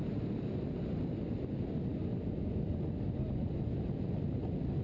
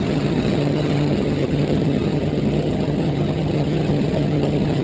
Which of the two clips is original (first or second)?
first